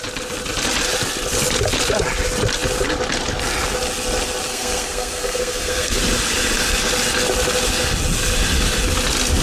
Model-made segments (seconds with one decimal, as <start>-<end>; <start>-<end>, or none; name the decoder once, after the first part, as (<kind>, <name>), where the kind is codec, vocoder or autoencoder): 4.5-6.0 (codec, SNAC)